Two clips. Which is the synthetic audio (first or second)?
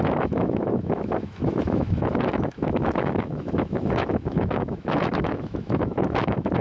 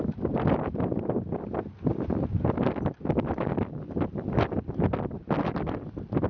first